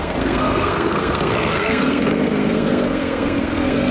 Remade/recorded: remade